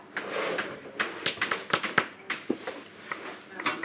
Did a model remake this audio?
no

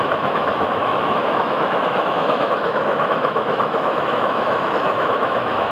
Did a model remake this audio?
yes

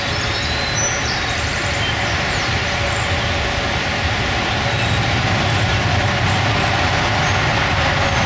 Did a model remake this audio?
no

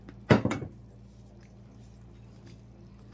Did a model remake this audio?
no